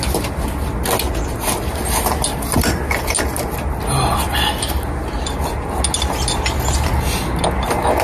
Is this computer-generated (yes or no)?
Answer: no